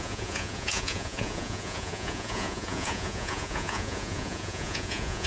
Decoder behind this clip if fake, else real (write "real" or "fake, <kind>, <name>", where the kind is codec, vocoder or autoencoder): fake, vocoder, Vocos